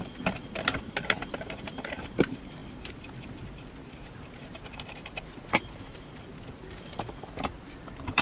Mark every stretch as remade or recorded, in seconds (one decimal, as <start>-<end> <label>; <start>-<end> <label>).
0.0-6.3 remade; 6.3-7.6 recorded; 7.6-8.2 remade